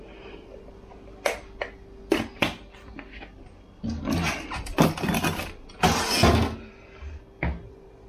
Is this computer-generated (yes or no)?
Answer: no